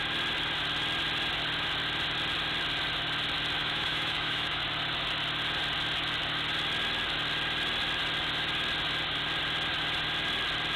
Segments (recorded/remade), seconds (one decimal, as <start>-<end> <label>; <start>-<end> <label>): 0.0-3.6 recorded; 3.6-4.6 remade; 4.6-10.8 recorded